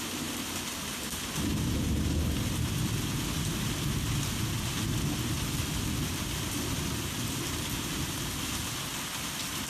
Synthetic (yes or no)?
no